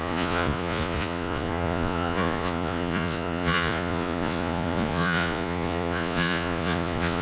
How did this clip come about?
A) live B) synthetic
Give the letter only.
B